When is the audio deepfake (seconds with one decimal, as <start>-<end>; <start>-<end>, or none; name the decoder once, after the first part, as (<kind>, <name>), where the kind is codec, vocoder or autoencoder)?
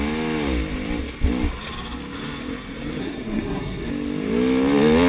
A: 3.0-3.9 (codec, SNAC)